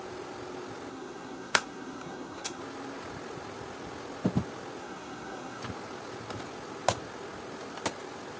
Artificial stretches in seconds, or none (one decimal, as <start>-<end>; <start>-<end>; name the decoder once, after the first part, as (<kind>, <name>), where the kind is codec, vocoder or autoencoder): 0.9-2.6 (codec, SNAC); 4.8-5.6